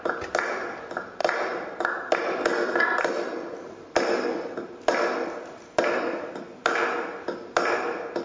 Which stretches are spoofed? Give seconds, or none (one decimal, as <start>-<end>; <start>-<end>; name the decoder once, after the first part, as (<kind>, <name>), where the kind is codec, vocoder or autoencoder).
none